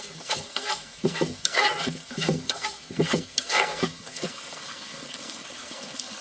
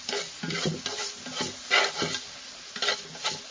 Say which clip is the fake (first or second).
first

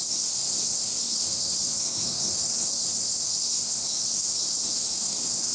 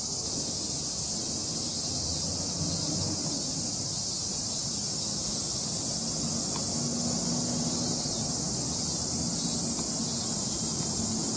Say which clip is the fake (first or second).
first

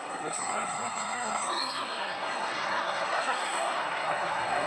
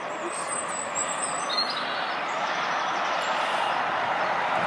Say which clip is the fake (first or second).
first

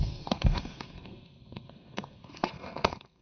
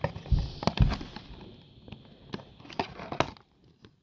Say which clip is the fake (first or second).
first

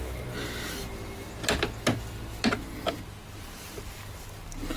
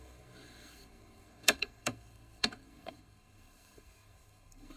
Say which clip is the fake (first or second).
second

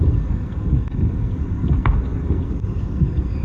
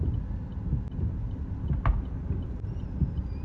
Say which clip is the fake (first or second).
first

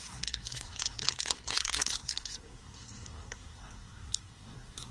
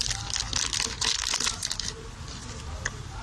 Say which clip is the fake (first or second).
first